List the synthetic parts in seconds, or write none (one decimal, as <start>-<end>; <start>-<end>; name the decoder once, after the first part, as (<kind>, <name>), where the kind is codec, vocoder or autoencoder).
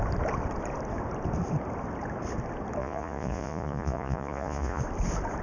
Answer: 2.8-4.8 (vocoder, Vocos)